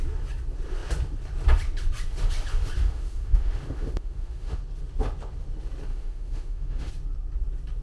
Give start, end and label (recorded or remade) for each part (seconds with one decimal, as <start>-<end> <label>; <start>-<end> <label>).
0.0-2.8 recorded; 2.8-4.6 remade; 4.6-5.9 recorded; 5.9-6.9 remade; 6.9-7.8 recorded